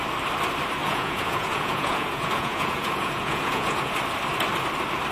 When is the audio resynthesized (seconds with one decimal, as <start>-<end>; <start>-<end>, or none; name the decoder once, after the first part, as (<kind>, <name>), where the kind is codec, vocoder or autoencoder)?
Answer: 0.8-3.9 (vocoder, Vocos)